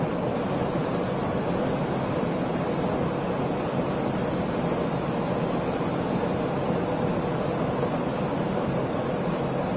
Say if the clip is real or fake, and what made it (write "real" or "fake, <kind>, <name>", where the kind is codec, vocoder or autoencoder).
real